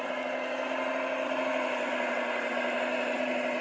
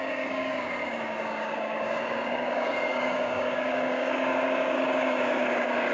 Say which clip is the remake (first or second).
second